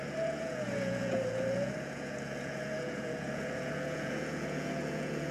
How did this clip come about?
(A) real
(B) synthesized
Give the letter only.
B